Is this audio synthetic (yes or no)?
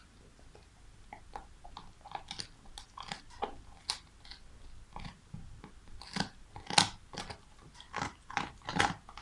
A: no